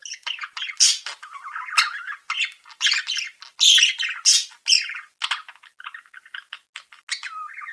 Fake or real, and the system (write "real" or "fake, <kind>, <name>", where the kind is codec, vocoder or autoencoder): real